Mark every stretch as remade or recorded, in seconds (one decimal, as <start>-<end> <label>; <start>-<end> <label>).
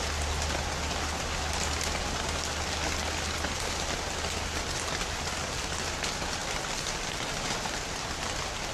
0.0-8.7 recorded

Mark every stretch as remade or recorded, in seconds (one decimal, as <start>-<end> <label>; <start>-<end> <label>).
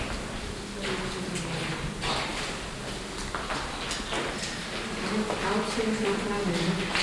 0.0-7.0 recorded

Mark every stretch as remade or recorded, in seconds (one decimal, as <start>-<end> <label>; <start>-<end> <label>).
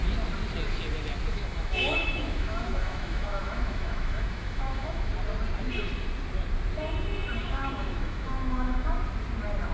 0.0-1.3 recorded; 1.3-5.1 remade; 5.1-7.4 recorded; 7.4-9.0 remade; 9.0-9.7 recorded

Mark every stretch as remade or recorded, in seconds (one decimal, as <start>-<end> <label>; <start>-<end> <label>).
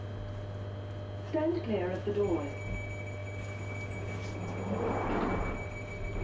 0.0-6.2 recorded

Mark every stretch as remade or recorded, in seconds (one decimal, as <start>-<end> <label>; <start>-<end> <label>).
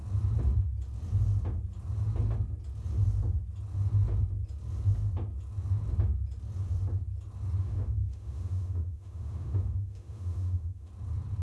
0.0-7.6 recorded; 7.6-10.9 remade; 10.9-11.4 recorded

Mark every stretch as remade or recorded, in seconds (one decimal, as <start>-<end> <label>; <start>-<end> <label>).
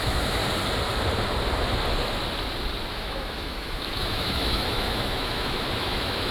0.0-0.4 remade; 0.4-2.9 recorded; 2.9-6.3 remade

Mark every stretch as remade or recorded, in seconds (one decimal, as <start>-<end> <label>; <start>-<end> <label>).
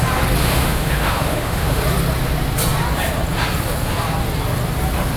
0.0-0.4 recorded; 0.4-1.8 remade; 1.8-5.2 recorded